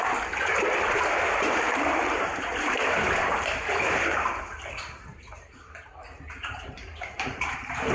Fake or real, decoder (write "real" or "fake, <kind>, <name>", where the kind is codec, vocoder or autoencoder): fake, vocoder, BigVGAN v2